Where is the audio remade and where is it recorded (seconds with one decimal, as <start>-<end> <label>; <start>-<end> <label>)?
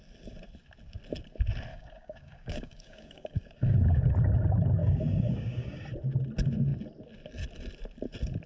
0.0-1.7 recorded; 1.7-4.1 remade; 4.1-4.8 recorded; 4.8-5.8 remade; 5.8-8.5 recorded